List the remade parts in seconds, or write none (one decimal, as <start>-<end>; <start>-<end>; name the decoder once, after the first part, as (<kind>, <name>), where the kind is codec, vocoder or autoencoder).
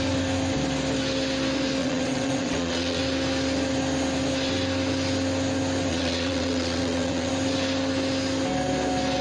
1.8-3.0 (vocoder, WaveNeXt); 5.9-7.3